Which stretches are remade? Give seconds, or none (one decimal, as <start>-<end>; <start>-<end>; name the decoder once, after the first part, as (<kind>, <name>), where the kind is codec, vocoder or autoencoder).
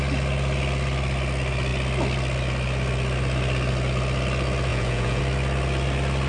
4.7-5.2 (vocoder, Vocos)